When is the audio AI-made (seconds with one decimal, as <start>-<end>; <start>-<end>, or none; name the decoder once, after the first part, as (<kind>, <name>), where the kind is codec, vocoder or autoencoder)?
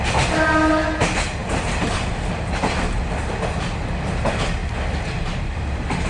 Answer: 1.4-2.4 (vocoder, BigVGAN v2); 4.6-6.1